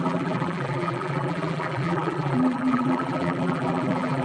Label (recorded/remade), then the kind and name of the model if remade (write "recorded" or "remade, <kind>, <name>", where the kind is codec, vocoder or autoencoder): remade, vocoder, BigVGAN v2